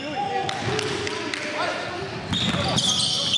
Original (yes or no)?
yes